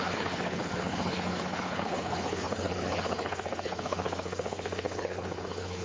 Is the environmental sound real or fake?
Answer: fake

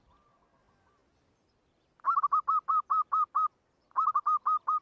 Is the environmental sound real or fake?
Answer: real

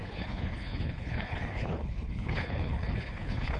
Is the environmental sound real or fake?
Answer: fake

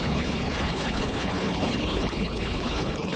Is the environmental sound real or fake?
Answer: fake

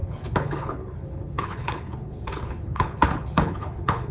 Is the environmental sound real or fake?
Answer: fake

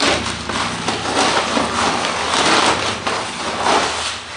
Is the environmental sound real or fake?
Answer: real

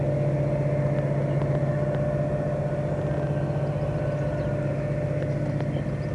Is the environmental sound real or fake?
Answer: real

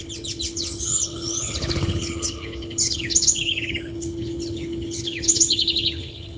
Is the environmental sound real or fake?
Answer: fake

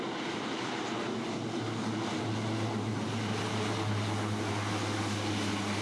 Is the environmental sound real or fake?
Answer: real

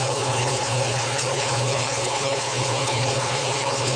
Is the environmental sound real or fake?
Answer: fake